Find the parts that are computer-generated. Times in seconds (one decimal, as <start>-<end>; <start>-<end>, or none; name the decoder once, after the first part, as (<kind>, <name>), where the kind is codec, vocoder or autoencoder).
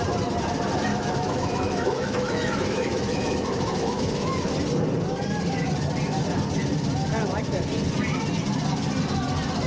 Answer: 0.9-4.5 (autoencoder, DAC-VAE)